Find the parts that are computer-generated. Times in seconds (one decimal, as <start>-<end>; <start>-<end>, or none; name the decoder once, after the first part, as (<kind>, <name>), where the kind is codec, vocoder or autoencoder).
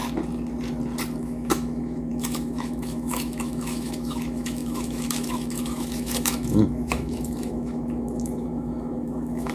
1.2-9.5 (autoencoder, DAC-VAE)